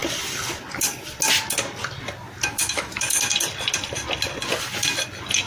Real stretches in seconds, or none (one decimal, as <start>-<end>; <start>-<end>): 0.0-2.5; 3.3-5.5